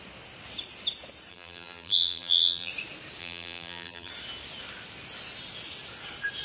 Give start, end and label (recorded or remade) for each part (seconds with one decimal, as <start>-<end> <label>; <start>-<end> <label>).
0.0-1.3 recorded; 1.3-2.7 remade; 2.7-3.2 recorded; 3.2-4.1 remade; 4.1-6.4 recorded